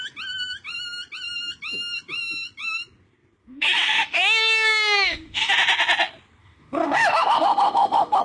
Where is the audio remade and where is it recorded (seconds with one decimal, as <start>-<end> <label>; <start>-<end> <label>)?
0.0-3.4 recorded; 3.4-5.5 remade; 5.5-6.4 recorded; 6.4-8.2 remade